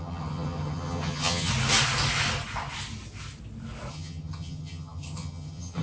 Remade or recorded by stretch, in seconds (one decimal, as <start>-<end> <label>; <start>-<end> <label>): 0.0-1.5 remade; 1.5-3.9 recorded; 3.9-5.8 remade